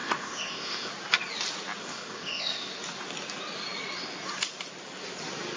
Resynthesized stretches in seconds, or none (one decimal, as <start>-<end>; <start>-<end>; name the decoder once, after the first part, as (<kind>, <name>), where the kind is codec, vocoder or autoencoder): 0.0-0.9 (codec, ZipCodec); 1.8-2.7